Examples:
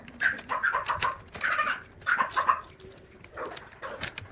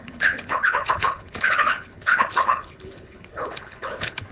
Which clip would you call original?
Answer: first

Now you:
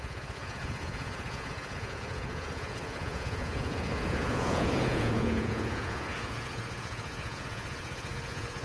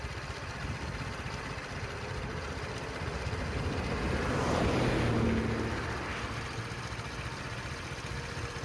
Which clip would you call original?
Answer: second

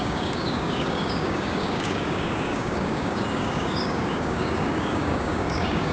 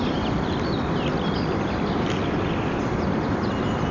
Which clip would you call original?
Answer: second